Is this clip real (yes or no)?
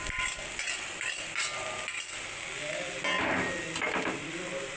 yes